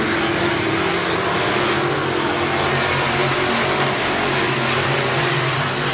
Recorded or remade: recorded